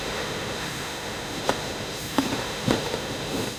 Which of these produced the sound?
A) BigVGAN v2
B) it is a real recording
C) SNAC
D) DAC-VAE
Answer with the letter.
D